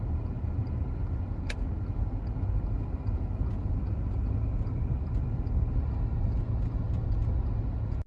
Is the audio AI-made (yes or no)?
no